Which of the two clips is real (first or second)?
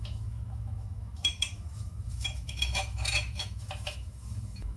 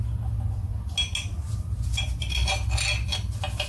second